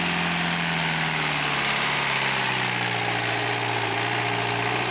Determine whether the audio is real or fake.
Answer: real